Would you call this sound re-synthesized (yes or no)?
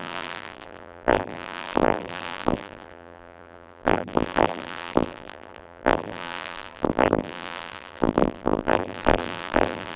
yes